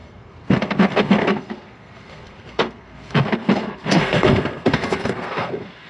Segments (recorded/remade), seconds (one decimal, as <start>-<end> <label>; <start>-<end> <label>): 0.0-5.9 remade